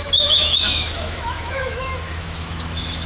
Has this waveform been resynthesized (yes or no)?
yes